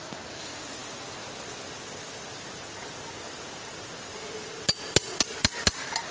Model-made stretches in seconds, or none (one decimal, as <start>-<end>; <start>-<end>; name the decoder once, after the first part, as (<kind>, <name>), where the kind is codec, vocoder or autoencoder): none